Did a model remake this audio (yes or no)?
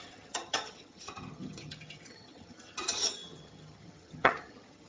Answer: yes